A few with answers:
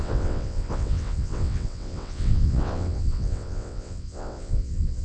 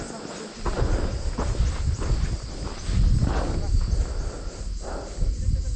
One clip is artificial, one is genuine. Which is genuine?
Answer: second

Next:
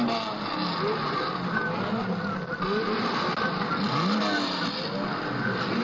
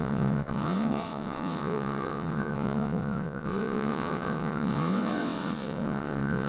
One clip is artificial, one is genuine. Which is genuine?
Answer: first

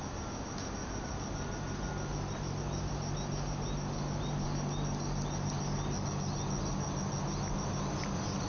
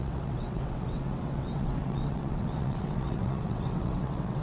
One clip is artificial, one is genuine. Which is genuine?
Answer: first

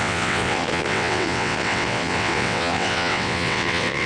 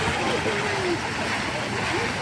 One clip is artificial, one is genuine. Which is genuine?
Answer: second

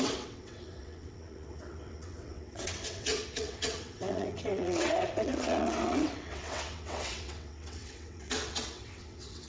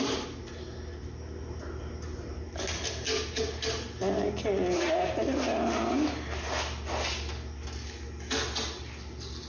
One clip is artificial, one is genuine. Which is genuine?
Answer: second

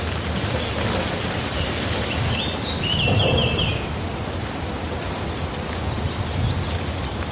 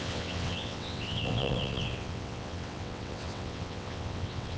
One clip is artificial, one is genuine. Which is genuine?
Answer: first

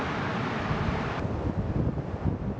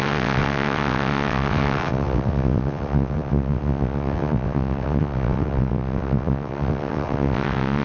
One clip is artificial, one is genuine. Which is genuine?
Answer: first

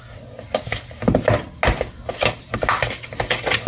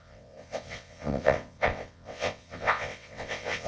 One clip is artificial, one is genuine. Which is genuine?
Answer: first